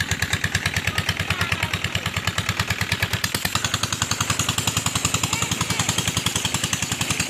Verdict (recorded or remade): recorded